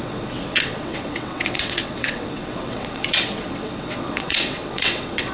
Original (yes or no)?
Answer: no